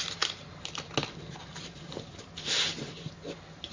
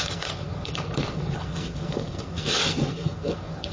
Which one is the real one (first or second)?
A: first